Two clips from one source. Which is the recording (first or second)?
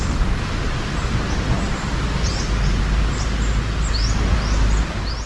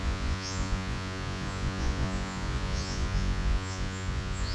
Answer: first